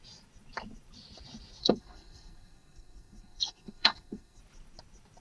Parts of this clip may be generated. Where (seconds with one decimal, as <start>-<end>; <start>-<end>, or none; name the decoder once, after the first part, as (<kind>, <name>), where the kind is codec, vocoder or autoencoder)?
1.6-4.4 (codec, SNAC)